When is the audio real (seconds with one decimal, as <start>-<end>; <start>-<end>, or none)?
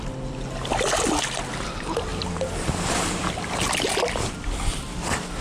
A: 0.0-2.1; 3.3-5.4